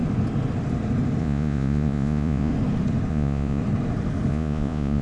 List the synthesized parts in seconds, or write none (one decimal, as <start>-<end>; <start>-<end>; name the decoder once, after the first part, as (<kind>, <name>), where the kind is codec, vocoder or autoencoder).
1.2-2.5 (vocoder, Vocos); 3.1-3.6; 4.3-5.0